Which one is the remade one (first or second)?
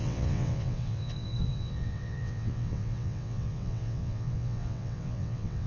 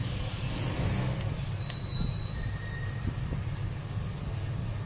first